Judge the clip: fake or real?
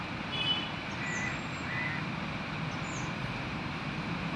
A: fake